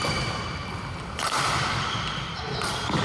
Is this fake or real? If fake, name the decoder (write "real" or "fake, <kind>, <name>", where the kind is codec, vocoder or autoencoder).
fake, vocoder, BigVGAN v2